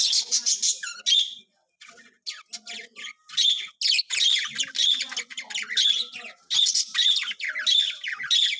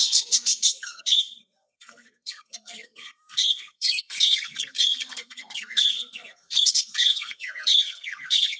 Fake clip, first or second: second